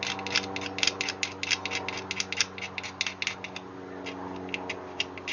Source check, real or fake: real